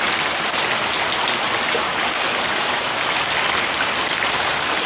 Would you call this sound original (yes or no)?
yes